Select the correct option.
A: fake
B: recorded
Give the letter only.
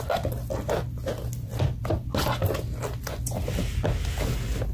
B